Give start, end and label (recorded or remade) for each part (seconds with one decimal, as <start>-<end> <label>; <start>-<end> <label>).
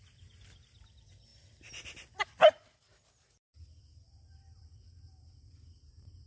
0.0-6.3 recorded